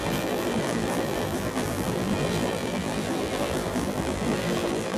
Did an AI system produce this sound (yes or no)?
yes